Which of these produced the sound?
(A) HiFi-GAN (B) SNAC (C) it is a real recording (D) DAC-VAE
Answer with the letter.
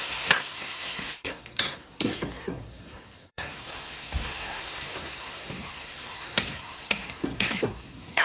B